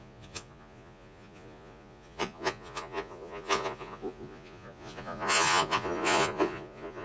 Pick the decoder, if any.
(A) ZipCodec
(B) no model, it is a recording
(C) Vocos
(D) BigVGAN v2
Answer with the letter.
C